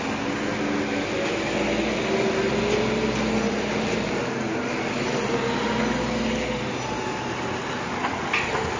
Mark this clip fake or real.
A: real